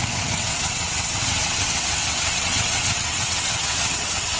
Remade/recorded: remade